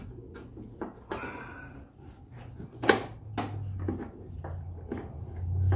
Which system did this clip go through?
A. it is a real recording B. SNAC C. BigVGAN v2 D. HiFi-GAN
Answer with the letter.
A